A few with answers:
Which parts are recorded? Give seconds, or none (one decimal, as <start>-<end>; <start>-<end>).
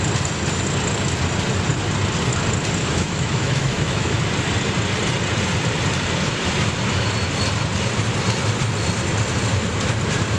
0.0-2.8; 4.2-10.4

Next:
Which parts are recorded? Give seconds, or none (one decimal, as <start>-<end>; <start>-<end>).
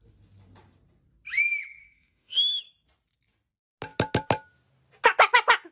0.0-1.8; 2.6-5.7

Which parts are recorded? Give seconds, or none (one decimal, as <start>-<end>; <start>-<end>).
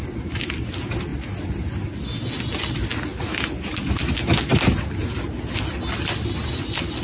0.0-7.0